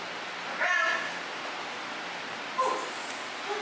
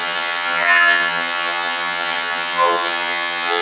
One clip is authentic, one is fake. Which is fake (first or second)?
second